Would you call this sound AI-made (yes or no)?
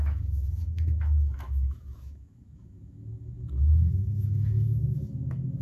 yes